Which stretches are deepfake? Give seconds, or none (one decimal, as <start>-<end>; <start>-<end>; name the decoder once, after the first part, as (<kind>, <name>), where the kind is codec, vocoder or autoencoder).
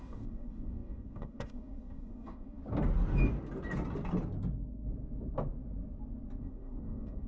0.0-2.6 (codec, DAC); 6.4-7.3